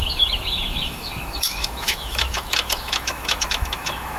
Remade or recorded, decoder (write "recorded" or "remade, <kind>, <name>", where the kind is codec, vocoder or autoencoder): remade, autoencoder, DAC-VAE